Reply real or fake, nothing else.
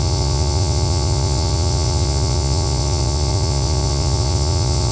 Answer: fake